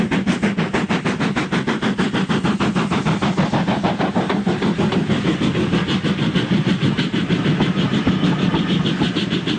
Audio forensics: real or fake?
real